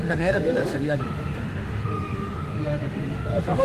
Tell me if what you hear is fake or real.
fake